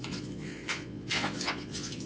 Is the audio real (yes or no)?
no